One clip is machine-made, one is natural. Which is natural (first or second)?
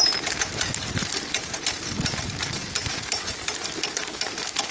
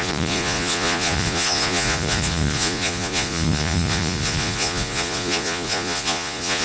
first